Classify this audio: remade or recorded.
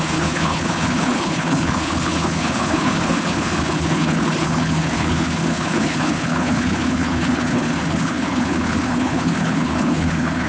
remade